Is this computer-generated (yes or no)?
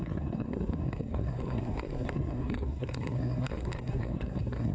yes